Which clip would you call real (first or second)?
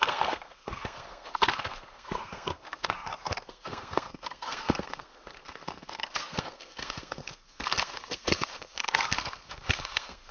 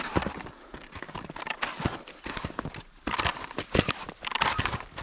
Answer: second